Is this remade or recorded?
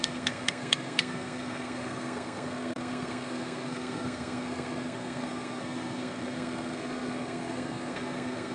remade